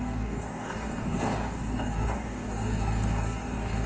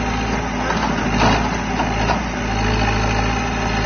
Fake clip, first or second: first